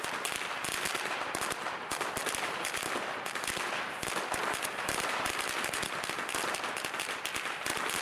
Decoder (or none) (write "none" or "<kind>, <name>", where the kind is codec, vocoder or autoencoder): none